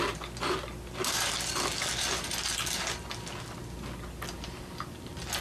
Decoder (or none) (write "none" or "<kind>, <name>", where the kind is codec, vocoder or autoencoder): none